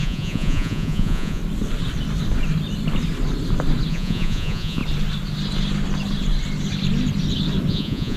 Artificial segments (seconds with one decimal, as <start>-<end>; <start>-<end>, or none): 0.0-1.4; 3.9-4.8; 7.7-8.2